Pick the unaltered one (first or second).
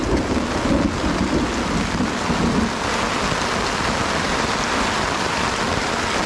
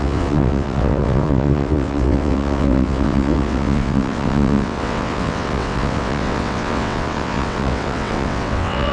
first